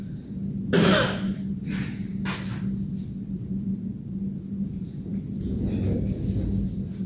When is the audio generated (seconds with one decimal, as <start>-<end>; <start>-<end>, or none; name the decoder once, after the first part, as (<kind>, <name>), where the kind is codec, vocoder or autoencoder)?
5.1-5.7 (vocoder, BigVGAN v2)